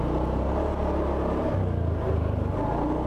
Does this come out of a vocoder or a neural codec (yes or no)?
no